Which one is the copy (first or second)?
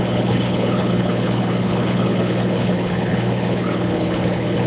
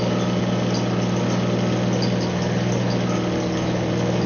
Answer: first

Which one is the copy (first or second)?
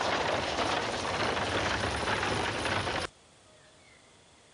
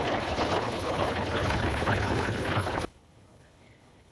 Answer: second